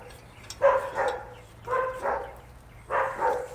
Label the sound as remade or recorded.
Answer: recorded